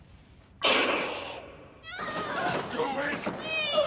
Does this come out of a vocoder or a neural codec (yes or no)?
yes